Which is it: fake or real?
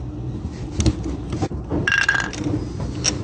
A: real